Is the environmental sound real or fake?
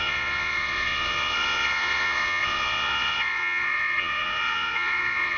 fake